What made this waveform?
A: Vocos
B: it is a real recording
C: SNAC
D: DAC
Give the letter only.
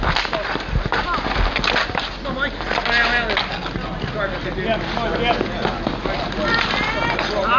B